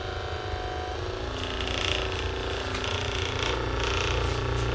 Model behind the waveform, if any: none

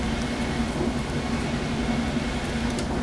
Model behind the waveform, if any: none